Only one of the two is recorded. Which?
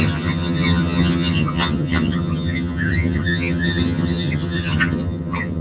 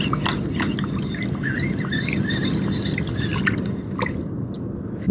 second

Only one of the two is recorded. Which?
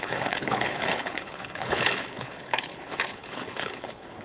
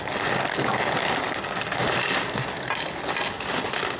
second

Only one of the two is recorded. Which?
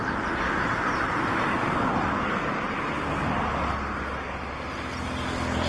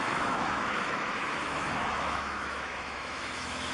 first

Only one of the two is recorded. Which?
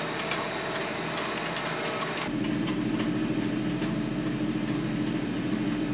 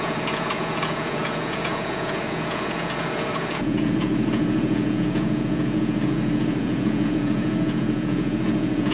first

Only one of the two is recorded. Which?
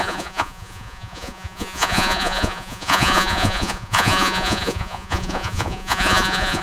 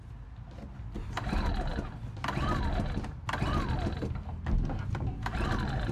second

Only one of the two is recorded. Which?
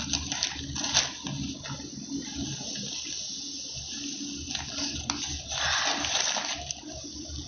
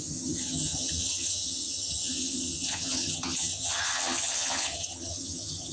first